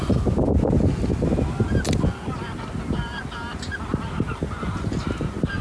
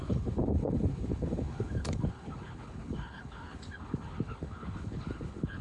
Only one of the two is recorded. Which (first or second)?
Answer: first